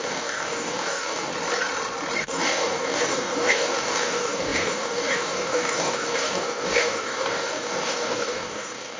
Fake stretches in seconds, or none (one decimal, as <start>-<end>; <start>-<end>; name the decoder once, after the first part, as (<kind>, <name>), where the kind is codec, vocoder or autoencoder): 0.0-1.3 (codec, DAC); 2.2-9.0

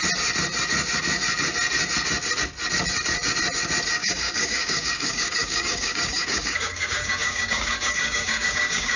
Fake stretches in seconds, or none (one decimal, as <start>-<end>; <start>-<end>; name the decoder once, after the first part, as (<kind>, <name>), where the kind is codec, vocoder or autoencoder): 4.0-9.0 (codec, DAC)

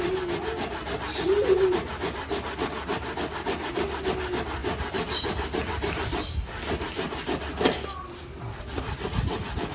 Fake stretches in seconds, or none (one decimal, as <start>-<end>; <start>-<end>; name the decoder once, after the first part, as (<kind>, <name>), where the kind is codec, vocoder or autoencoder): none

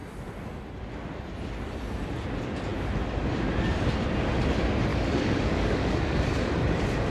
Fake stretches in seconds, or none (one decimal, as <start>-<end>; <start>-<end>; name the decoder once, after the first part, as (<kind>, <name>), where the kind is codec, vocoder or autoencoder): 4.9-6.2 (codec, DAC)

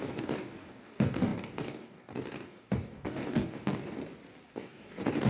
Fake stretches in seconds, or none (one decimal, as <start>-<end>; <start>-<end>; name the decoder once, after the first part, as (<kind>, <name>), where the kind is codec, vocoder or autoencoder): 0.0-4.0 (codec, DAC); 4.5-5.3

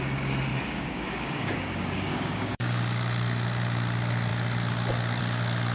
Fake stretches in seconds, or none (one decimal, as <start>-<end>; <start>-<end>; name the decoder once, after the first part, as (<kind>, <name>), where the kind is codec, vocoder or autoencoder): 0.5-2.8 (codec, DAC)